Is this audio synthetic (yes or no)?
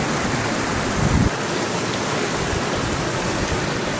no